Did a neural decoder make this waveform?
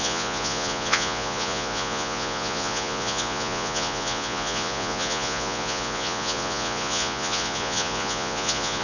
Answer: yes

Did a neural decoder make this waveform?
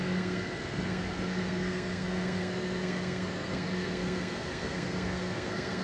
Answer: yes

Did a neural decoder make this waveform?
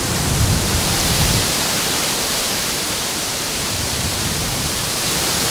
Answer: yes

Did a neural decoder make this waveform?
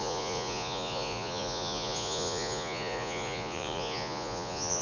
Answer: yes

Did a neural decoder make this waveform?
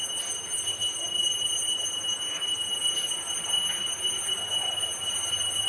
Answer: no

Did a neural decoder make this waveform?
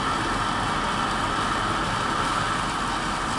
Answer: no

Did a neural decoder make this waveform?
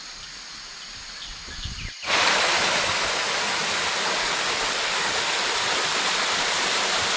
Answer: no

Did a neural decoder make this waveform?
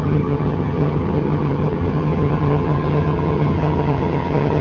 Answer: yes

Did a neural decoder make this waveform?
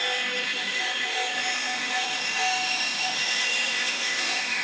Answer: yes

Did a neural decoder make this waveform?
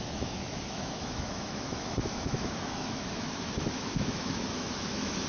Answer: yes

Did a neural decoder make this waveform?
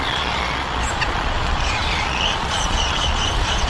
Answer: yes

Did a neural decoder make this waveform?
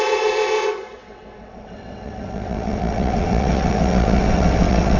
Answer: yes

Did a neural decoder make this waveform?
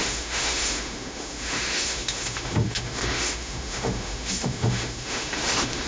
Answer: yes